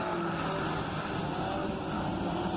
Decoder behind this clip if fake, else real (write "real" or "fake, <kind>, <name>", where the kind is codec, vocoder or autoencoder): real